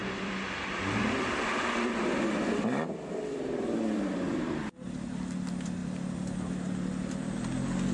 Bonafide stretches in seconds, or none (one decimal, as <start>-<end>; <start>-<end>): 4.7-7.9

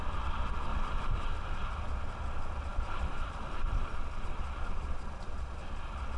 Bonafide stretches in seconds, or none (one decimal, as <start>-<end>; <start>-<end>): 0.0-0.7; 1.3-2.7; 3.9-6.2

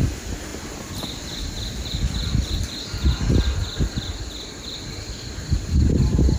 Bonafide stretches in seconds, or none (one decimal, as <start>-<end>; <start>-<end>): 0.0-6.4

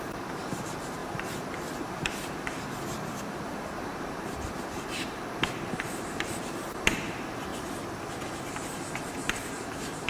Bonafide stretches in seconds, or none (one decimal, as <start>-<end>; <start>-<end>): 7.5-8.1

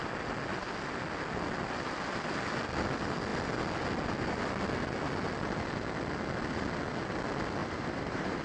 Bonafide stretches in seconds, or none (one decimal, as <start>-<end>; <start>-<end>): 0.0-7.6

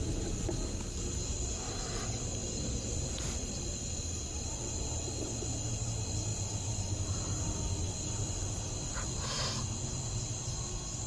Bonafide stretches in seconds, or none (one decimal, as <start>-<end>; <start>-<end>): 0.0-8.9; 9.6-11.1